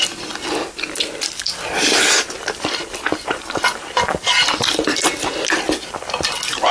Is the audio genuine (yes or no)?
yes